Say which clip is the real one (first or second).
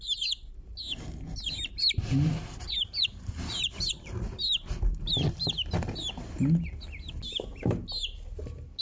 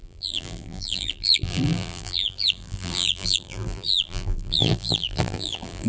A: first